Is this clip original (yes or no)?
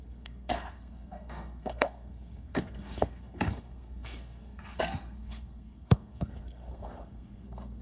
no